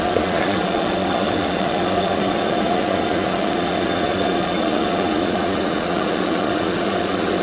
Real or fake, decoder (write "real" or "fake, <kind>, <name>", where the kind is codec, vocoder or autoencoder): fake, vocoder, Vocos